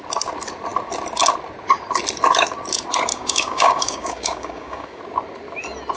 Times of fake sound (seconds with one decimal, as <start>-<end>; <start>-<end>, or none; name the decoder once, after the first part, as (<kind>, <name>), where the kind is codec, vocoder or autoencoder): 3.1-5.0 (codec, DAC)